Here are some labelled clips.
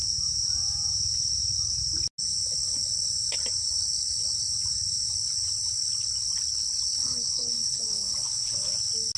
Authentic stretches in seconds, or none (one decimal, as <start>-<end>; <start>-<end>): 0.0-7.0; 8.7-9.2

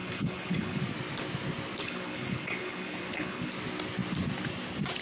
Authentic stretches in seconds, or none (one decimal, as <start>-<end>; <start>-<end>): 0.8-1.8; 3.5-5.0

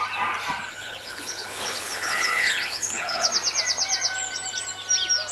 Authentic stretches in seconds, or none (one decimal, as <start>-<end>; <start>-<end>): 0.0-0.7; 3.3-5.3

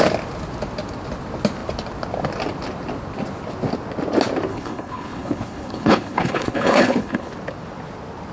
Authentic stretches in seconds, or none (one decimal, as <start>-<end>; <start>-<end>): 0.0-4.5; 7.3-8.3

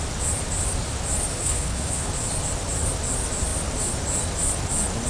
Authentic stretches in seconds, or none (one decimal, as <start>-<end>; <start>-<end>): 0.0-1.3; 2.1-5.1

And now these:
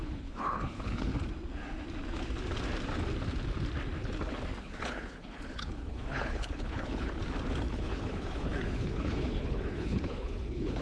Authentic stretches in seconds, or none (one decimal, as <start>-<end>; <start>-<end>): 1.1-4.6; 7.2-7.7

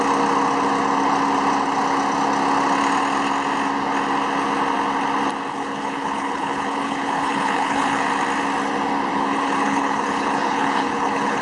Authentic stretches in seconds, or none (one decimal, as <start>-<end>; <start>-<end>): 0.0-5.5; 8.0-9.1

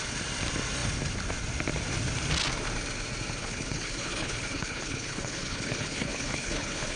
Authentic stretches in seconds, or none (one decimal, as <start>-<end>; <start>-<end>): 0.0-3.4